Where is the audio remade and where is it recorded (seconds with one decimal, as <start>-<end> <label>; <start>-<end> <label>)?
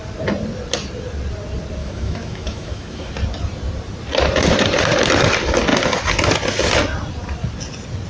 0.0-1.8 recorded; 1.8-3.1 remade; 3.1-8.1 recorded